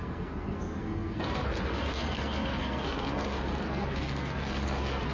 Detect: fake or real fake